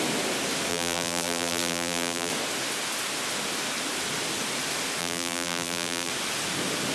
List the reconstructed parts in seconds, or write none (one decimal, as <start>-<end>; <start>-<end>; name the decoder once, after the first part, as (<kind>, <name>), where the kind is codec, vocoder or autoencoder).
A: 0.7-2.3 (vocoder, BigVGAN v2); 5.0-6.1